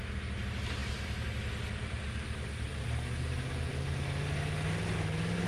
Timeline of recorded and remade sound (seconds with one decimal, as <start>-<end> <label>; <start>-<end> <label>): 0.0-5.5 recorded